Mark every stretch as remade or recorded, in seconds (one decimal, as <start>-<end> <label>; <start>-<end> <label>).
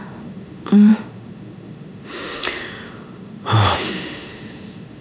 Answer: 0.0-5.0 remade